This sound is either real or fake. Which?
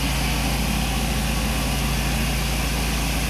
real